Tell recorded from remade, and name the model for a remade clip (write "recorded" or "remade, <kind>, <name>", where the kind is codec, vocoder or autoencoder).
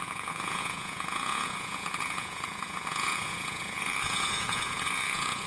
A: remade, vocoder, Vocos